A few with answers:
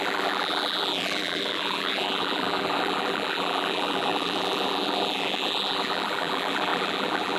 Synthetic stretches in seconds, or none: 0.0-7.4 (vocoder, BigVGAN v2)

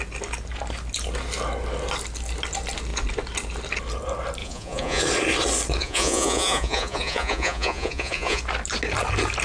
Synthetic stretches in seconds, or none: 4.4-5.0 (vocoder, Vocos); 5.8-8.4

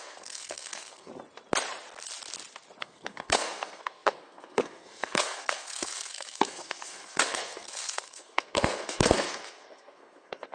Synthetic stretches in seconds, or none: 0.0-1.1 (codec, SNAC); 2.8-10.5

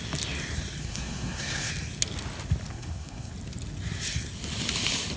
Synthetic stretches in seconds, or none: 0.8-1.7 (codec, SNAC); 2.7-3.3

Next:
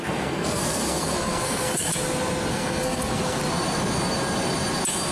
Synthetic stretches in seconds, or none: 0.0-1.9 (codec, SNAC); 2.5-3.4

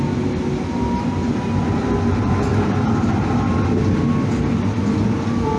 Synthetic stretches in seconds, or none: none